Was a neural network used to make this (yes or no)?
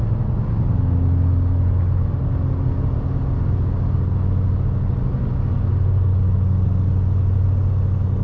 no